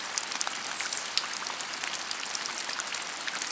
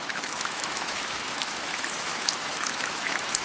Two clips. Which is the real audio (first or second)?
first